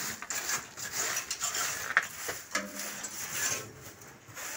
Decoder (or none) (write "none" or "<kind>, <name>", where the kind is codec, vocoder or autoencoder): none